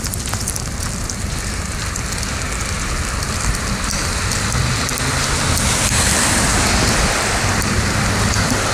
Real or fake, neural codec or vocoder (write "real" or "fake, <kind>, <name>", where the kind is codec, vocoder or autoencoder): real